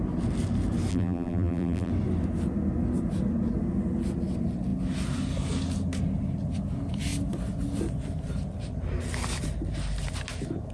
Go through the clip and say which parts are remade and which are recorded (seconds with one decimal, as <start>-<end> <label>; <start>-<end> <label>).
0.0-0.9 recorded; 0.9-1.9 remade; 1.9-10.7 recorded

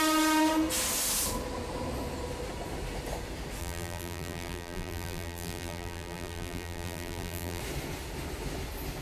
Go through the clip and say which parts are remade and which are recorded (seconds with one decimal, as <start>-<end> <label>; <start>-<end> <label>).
0.0-3.6 recorded; 3.6-7.6 remade; 7.6-9.0 recorded

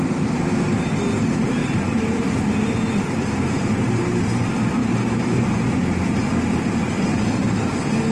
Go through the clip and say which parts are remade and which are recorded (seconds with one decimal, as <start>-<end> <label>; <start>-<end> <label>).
0.0-1.6 recorded; 1.6-4.3 remade; 4.3-4.8 recorded; 4.8-5.4 remade; 5.4-8.1 recorded

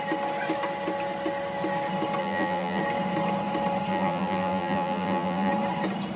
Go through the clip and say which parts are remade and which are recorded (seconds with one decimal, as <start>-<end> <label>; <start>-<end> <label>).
0.0-2.2 recorded; 2.2-2.8 remade; 2.8-3.9 recorded; 3.9-5.5 remade; 5.5-6.2 recorded

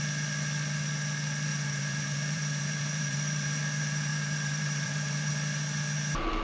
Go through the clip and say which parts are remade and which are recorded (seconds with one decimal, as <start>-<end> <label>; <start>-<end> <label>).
0.0-1.5 recorded; 1.5-3.6 remade; 3.6-4.1 recorded; 4.1-5.3 remade; 5.3-6.4 recorded